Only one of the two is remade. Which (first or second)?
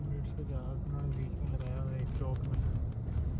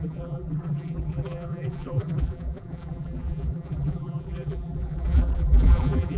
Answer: second